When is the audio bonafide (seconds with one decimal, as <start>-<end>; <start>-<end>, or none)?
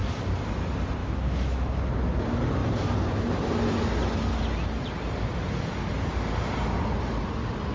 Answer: 0.0-1.0; 1.8-7.7